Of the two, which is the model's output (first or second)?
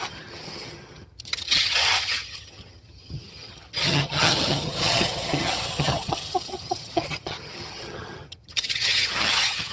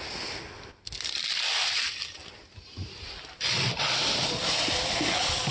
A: first